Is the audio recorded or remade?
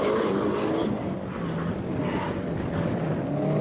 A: recorded